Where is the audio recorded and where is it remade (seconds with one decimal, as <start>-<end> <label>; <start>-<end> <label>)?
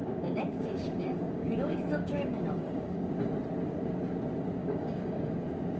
0.0-3.1 remade; 3.1-4.6 recorded; 4.6-5.3 remade; 5.3-5.8 recorded